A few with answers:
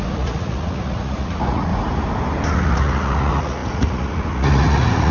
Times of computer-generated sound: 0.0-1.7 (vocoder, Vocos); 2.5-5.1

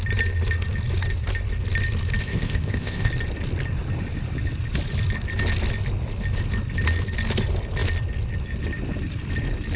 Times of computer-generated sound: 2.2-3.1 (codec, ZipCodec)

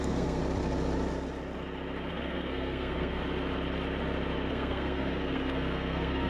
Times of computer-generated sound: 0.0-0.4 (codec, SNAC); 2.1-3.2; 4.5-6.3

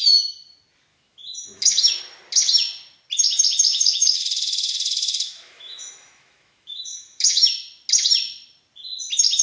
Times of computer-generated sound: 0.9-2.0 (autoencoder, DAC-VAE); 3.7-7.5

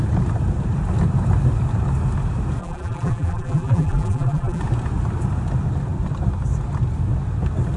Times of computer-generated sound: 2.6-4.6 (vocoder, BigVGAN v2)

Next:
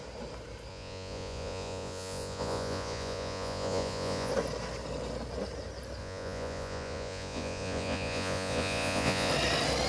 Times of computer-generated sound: 0.7-4.3 (vocoder, Vocos); 6.0-9.3